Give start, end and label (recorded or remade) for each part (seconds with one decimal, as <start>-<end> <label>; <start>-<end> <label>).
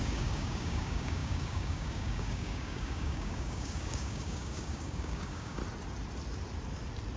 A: 0.0-5.6 remade; 5.6-7.2 recorded